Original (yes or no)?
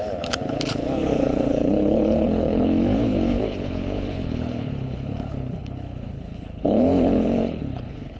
no